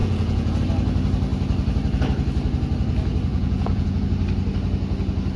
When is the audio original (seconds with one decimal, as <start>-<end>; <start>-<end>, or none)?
0.6-3.3; 4.0-5.4